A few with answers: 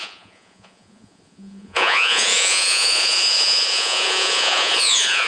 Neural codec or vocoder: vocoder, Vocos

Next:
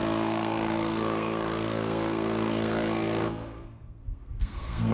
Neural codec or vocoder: codec, SNAC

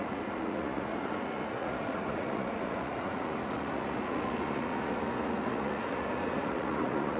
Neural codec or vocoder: vocoder, Vocos